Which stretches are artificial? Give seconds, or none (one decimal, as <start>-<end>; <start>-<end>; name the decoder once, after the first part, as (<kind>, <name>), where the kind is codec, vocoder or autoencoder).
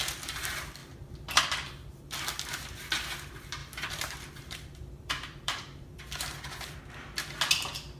0.8-1.4 (vocoder, BigVGAN v2); 3.6-6.8